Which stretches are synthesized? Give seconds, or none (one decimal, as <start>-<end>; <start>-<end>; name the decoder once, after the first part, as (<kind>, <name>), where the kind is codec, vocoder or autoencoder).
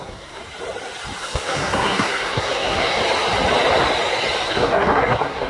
0.0-0.4 (codec, SNAC); 1.2-3.0; 4.5-5.5